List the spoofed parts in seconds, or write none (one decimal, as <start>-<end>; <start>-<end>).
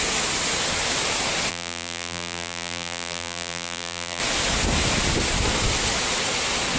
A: 1.5-4.2